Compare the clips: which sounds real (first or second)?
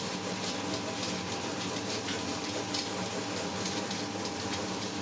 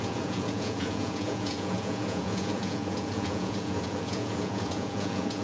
first